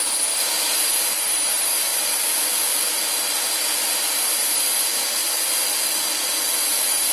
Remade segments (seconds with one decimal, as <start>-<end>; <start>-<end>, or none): none